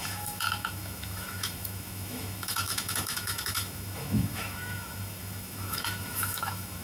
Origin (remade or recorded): remade